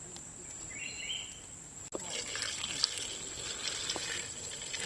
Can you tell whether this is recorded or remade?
recorded